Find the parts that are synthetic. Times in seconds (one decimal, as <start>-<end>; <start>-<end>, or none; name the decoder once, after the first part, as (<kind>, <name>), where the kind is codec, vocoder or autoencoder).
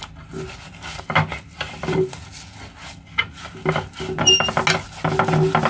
none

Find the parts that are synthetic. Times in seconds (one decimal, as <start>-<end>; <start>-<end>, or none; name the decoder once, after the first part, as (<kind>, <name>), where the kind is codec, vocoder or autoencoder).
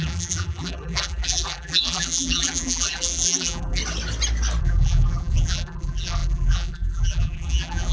0.0-3.8 (vocoder, BigVGAN v2); 4.6-7.9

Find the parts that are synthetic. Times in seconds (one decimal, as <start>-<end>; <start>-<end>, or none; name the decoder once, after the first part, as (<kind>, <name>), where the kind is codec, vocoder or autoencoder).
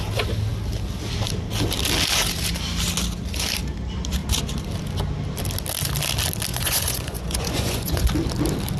6.5-8.1 (vocoder, Vocos)